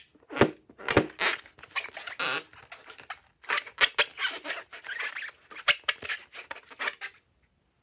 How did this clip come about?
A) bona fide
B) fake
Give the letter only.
A